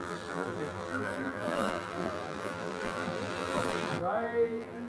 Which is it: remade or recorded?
remade